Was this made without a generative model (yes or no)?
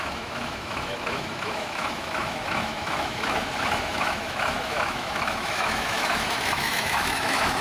no